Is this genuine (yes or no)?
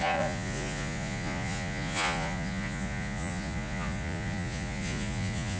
no